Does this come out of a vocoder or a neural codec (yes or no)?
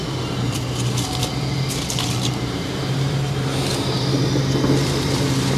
yes